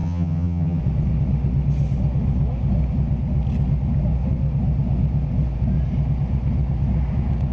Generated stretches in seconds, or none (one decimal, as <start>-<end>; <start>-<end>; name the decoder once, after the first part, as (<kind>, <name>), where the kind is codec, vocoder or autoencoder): 0.0-0.8 (vocoder, HiFi-GAN)